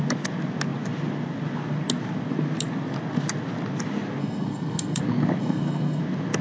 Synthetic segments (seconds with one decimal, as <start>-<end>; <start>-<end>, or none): 4.2-5.0; 5.4-6.0